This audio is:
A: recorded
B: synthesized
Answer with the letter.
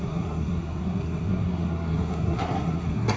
B